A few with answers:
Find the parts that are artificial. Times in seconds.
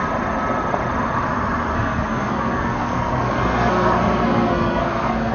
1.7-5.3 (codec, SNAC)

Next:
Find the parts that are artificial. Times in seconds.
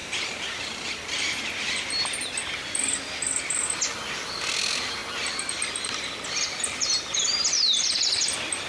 0.0-0.9 (vocoder, BigVGAN v2)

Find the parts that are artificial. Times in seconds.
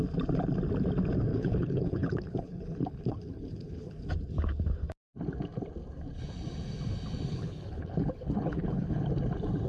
1.3-4.1 (codec, HILCodec); 7.3-9.0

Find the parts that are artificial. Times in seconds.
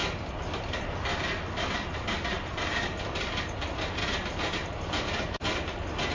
none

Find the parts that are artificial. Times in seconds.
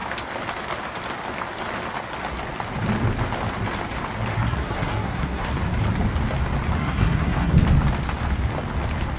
4.3-5.6 (codec, SNAC); 6.8-7.5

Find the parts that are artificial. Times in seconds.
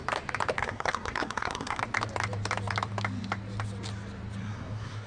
0.6-1.8 (codec, SNAC); 4.4-5.1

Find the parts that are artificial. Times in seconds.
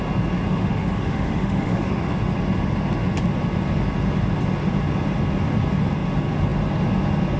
0.5-2.1 (autoencoder, DAC-VAE)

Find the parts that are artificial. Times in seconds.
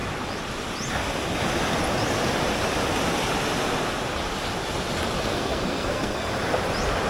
5.3-6.3 (codec, SNAC)